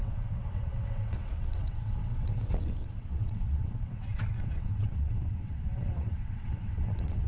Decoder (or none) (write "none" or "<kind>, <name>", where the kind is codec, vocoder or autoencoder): vocoder, WaveNeXt